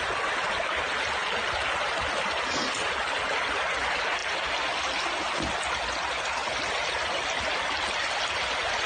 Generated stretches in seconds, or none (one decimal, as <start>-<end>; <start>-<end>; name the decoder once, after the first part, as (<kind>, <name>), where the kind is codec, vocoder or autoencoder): none